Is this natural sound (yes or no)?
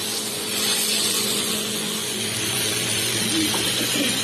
no